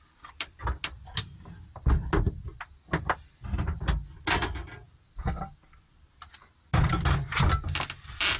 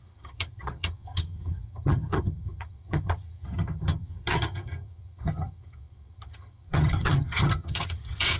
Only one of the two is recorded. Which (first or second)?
first